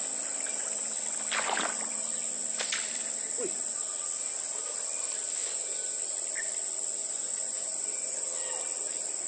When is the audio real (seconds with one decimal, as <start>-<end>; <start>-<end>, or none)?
0.0-5.4; 6.0-7.0; 8.3-9.3